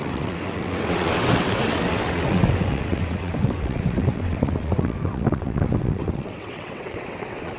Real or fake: fake